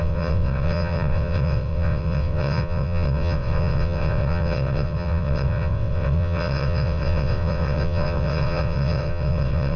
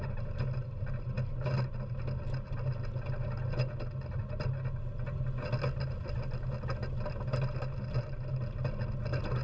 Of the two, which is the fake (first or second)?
first